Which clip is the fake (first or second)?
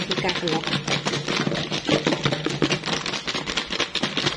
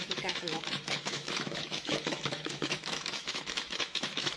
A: second